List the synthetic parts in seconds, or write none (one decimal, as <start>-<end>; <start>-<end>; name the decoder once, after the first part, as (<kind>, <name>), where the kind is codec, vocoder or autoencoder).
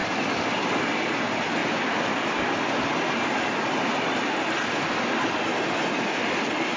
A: none